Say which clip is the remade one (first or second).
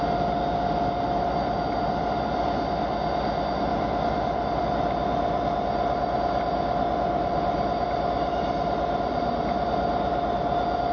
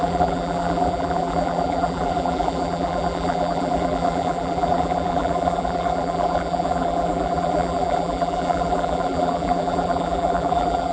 second